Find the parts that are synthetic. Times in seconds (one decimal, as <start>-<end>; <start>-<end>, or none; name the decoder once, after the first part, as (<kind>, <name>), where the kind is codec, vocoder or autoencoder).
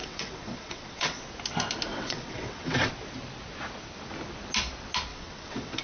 0.0-1.2 (vocoder, WaveNeXt); 1.9-2.9; 5.1-5.8